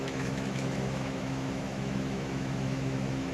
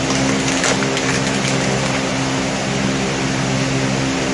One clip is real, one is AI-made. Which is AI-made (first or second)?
first